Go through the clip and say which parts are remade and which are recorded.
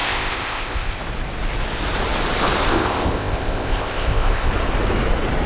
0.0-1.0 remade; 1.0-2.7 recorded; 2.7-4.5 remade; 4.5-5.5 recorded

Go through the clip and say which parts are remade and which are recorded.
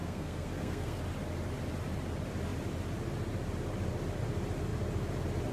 0.0-1.0 remade; 1.0-5.5 recorded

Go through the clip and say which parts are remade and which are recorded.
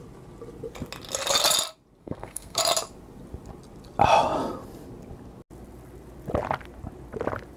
0.0-2.0 recorded; 2.0-2.6 remade; 2.6-7.6 recorded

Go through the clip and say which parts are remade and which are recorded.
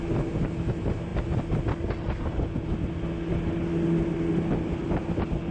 0.0-5.5 recorded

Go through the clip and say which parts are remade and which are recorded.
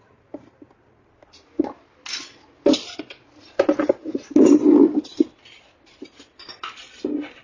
0.0-7.4 recorded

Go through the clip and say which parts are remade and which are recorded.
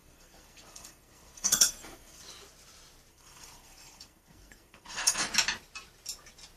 0.0-2.2 remade; 2.2-3.1 recorded; 3.1-5.3 remade; 5.3-6.6 recorded